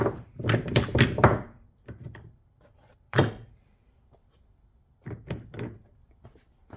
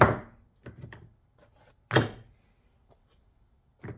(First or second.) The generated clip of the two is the first